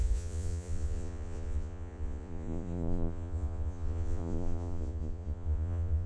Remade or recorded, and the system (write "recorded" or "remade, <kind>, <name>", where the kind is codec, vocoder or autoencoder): remade, vocoder, Vocos